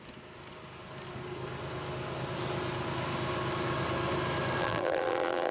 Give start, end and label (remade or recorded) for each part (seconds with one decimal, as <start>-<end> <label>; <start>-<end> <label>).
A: 0.0-4.6 recorded; 4.6-5.5 remade

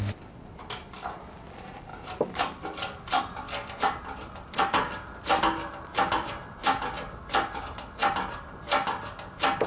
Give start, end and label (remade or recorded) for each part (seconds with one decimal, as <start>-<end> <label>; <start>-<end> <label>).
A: 0.0-1.9 recorded; 1.9-3.8 remade; 3.8-4.2 recorded; 4.2-8.1 remade; 8.1-9.7 recorded